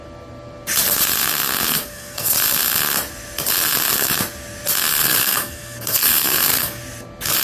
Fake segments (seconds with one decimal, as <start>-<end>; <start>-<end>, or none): 1.7-2.3; 5.0-6.8